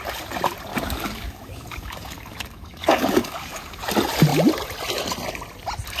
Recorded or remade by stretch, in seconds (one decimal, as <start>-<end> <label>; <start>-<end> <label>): 0.0-0.7 recorded; 0.7-3.8 remade; 3.8-6.0 recorded